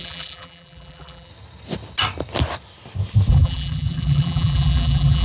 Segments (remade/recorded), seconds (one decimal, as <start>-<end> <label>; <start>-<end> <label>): 0.0-1.3 remade; 1.3-3.3 recorded; 3.3-5.2 remade